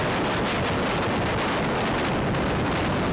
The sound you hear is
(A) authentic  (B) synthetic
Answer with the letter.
A